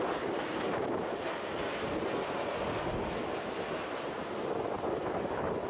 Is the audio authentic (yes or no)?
yes